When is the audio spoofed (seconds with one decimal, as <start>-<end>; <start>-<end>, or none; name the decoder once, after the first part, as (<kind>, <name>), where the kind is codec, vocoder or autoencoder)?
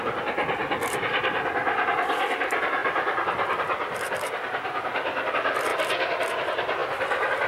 none